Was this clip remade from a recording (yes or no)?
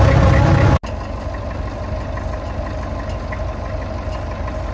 no